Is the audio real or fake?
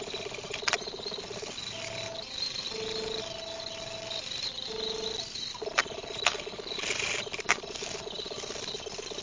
real